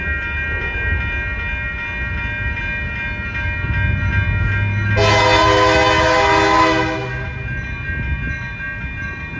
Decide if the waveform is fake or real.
real